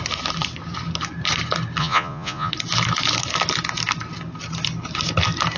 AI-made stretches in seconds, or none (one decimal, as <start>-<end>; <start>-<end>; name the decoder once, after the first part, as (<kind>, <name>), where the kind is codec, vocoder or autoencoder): 1.8-2.5 (vocoder, Vocos)